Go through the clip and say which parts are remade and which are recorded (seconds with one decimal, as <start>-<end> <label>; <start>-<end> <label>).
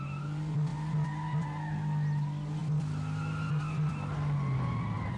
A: 0.0-5.2 recorded